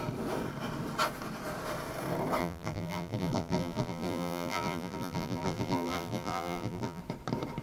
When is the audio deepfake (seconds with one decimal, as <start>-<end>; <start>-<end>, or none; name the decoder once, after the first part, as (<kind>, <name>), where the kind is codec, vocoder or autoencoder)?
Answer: 2.4-7.0 (vocoder, BigVGAN v2)